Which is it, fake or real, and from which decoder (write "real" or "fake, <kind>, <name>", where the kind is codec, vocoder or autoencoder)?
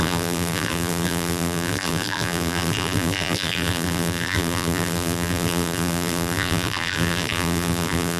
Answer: fake, vocoder, BigVGAN v2